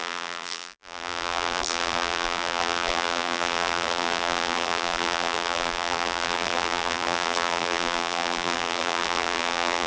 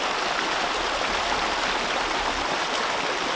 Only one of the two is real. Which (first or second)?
second